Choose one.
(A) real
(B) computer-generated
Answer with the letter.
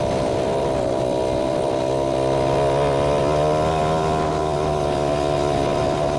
A